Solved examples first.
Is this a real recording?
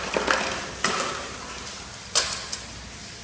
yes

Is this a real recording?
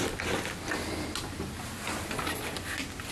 yes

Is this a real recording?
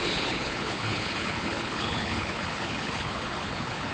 no